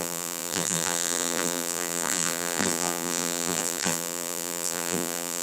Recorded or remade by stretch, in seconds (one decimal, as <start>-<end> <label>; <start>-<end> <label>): 0.0-5.4 remade